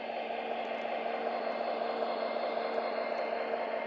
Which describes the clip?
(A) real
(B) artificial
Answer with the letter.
A